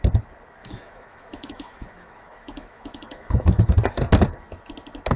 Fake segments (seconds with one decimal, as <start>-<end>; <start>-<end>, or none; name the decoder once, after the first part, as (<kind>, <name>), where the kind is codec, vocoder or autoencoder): 0.6-3.7 (autoencoder, DAC-VAE)